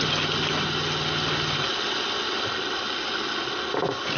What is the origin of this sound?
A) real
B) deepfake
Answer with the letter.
A